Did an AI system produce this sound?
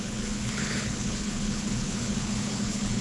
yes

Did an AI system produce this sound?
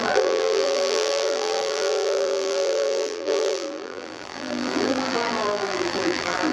yes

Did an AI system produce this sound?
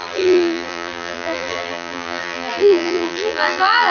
yes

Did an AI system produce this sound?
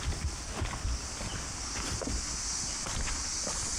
no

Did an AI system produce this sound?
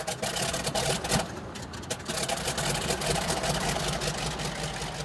no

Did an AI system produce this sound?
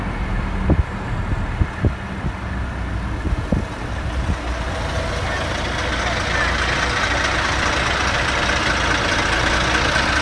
no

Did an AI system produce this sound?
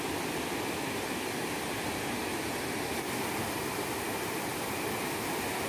no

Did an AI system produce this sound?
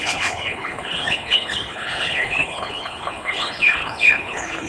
yes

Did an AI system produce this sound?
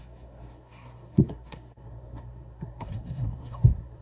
yes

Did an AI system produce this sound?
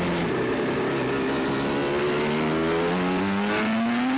no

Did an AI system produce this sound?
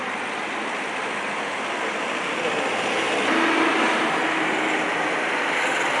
no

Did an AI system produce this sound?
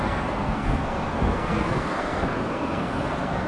yes